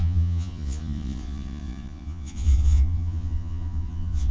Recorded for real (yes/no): no